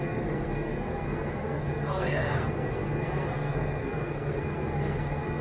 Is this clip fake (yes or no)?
yes